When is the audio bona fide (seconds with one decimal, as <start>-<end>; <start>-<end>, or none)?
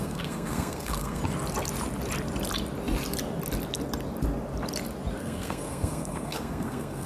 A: 1.2-5.2